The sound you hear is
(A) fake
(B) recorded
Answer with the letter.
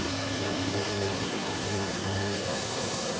A